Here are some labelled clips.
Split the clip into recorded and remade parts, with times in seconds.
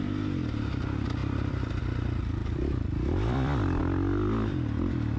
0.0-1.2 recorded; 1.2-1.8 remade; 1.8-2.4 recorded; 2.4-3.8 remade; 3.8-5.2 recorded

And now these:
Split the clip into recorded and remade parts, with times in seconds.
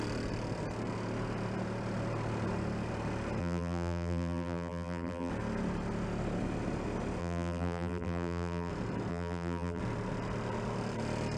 0.0-3.4 recorded; 3.4-5.3 remade; 5.3-7.2 recorded; 7.2-8.7 remade; 8.7-9.1 recorded; 9.1-9.8 remade; 9.8-11.4 recorded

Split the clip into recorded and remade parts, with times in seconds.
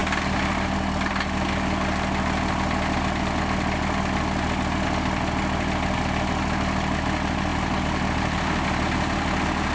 0.0-9.7 recorded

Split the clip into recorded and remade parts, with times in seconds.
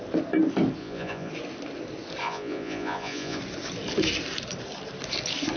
0.0-0.8 recorded; 0.8-1.3 remade; 1.3-2.2 recorded; 2.2-3.4 remade; 3.4-5.6 recorded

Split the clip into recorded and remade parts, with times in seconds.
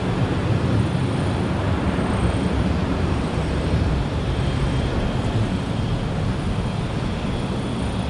0.0-2.8 recorded; 2.8-4.0 remade; 4.0-8.1 recorded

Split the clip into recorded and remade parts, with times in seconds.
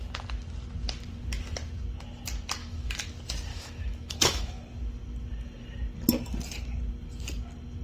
0.0-2.6 recorded; 2.6-3.1 remade; 3.1-3.5 recorded; 3.5-4.6 remade; 4.6-7.8 recorded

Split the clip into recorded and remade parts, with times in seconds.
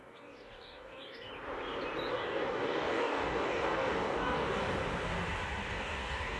0.0-1.3 remade; 1.3-2.1 recorded; 2.1-4.8 remade; 4.8-5.7 recorded; 5.7-6.4 remade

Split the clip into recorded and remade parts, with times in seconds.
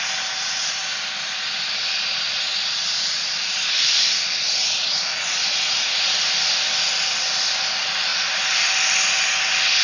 0.0-4.8 recorded; 4.8-6.2 remade; 6.2-9.8 recorded